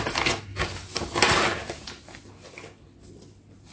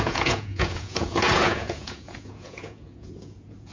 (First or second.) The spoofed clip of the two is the second